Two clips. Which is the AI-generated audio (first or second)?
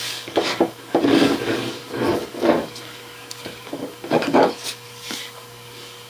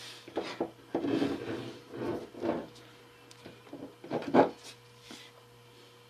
first